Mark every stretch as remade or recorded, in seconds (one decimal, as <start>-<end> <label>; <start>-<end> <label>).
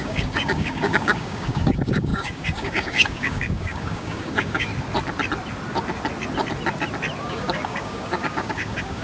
0.0-4.7 remade; 4.7-7.2 recorded; 7.2-9.0 remade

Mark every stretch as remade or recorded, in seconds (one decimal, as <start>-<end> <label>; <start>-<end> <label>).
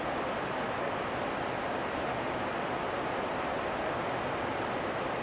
0.0-5.2 recorded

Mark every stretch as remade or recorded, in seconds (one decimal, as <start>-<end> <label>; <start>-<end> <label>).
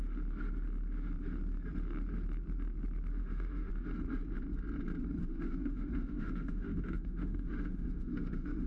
0.0-3.2 recorded; 3.2-3.7 remade; 3.7-5.2 recorded; 5.2-8.7 remade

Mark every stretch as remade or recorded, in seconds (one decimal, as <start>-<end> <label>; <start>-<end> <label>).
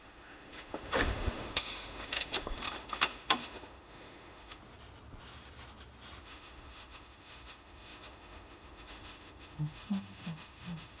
0.0-4.6 remade; 4.6-6.2 recorded; 6.2-11.0 remade